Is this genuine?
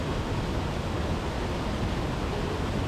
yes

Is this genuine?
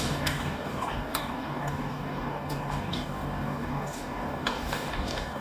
no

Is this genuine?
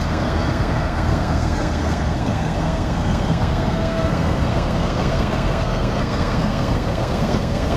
no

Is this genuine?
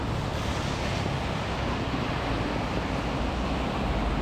yes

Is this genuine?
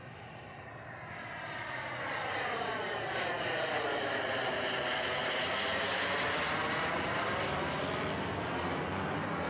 yes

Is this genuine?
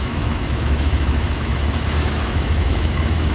no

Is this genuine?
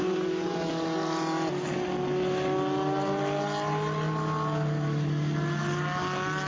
yes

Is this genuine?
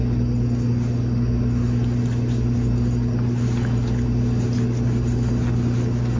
yes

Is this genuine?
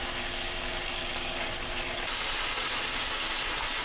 yes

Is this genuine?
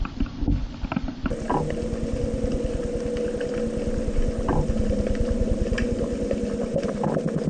yes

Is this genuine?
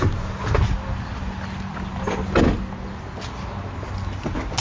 yes